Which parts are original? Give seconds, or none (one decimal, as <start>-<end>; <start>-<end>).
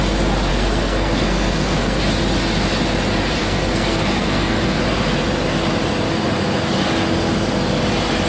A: 0.0-0.5; 2.0-3.4; 4.8-8.3